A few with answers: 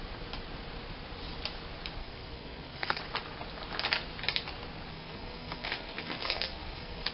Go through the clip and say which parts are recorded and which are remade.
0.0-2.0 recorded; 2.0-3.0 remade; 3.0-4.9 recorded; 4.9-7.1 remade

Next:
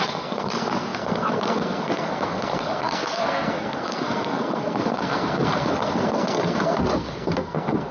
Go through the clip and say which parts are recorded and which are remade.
0.0-7.9 remade

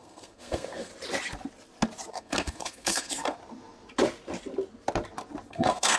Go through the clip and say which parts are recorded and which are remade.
0.0-0.9 remade; 0.9-2.1 recorded; 2.1-3.4 remade; 3.4-5.5 recorded; 5.5-6.0 remade

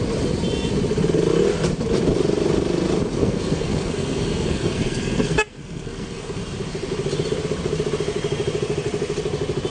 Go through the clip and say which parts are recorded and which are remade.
0.0-3.2 recorded; 3.2-6.4 remade; 6.4-9.7 recorded